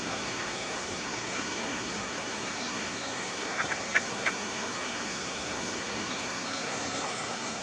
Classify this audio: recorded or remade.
remade